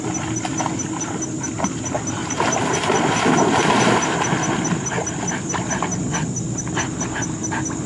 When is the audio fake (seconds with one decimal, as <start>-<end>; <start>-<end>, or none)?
2.2-4.3